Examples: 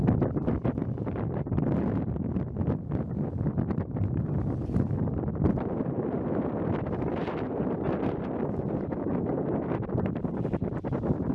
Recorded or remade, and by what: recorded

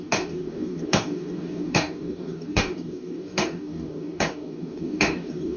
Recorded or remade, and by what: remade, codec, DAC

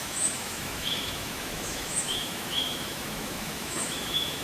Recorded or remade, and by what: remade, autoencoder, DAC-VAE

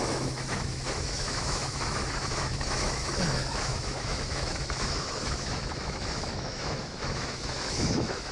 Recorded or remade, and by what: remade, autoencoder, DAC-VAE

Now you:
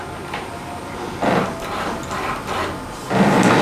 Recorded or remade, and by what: recorded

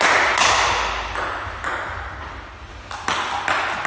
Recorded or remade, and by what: recorded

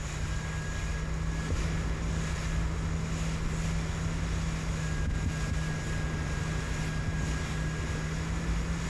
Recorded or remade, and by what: recorded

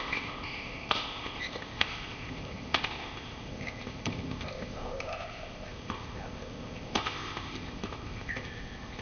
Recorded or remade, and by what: remade, codec, ZipCodec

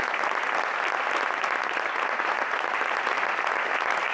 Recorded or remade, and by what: recorded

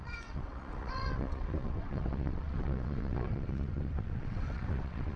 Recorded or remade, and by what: remade, vocoder, WaveNeXt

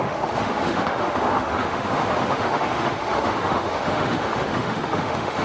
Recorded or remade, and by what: remade, autoencoder, DAC-VAE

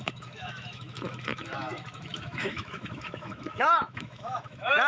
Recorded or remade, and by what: remade, autoencoder, DAC-VAE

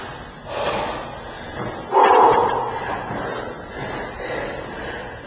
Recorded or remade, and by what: recorded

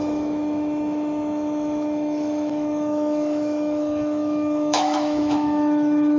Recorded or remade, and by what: remade, autoencoder, DAC-VAE